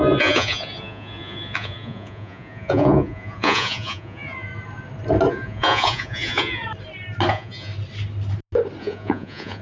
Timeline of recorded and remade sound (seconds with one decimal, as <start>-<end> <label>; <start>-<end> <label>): 0.0-4.5 remade; 4.5-5.3 recorded; 5.3-6.6 remade; 6.6-7.3 recorded; 7.3-7.7 remade; 7.7-8.8 recorded; 8.8-9.6 remade